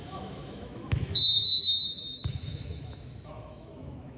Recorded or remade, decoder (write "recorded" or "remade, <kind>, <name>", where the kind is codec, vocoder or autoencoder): remade, autoencoder, DAC-VAE